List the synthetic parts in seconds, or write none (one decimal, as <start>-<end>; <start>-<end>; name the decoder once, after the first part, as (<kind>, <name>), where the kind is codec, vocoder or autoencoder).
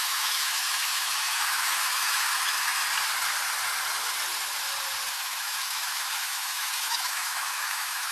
0.0-2.8 (autoencoder, DAC-VAE); 5.1-8.1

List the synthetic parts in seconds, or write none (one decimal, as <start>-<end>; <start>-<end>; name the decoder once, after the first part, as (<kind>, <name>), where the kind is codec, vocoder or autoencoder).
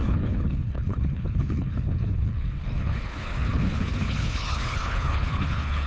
0.0-5.9 (codec, HILCodec)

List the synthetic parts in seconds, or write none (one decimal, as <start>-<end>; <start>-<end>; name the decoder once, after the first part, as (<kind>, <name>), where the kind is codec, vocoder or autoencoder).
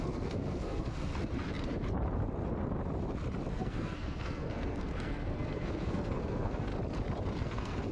0.0-1.1 (codec, SNAC); 3.5-6.7; 7.4-7.9